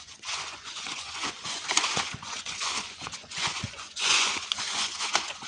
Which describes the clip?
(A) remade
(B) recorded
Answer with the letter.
A